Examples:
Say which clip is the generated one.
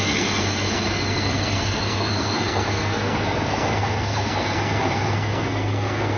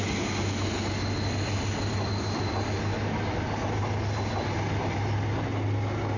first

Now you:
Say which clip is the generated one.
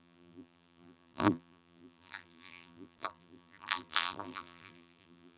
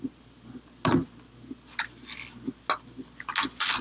first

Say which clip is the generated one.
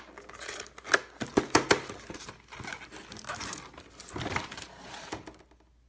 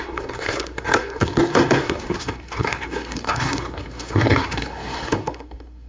second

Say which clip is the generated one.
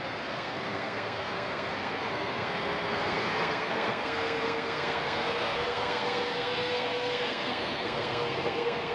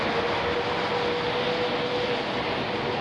first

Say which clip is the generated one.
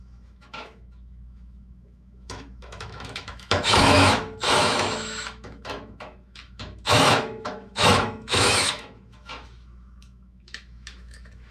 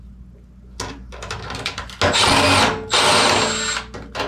first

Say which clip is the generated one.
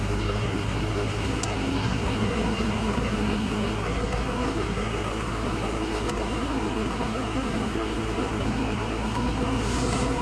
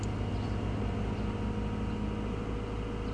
first